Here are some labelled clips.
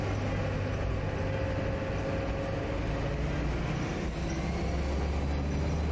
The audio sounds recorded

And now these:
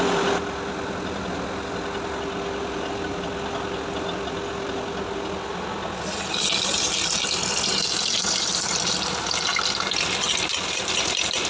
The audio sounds recorded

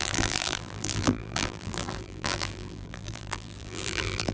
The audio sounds remade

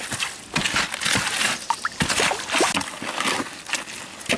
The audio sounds recorded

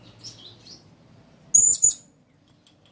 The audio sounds recorded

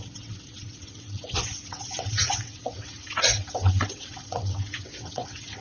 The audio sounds remade